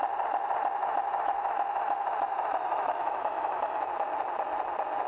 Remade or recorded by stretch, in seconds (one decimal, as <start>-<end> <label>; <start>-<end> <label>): 0.0-0.8 recorded; 0.8-3.9 remade; 3.9-5.1 recorded